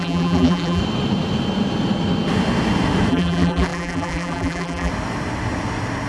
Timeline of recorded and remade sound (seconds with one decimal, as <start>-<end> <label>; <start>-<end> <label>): 0.0-0.8 remade; 0.8-3.1 recorded; 3.1-4.9 remade; 4.9-6.1 recorded